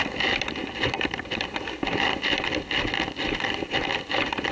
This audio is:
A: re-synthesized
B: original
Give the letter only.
B